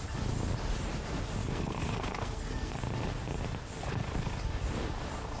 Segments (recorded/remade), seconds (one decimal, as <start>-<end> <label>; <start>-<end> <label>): 0.0-1.4 recorded; 1.4-2.8 remade; 2.8-5.4 recorded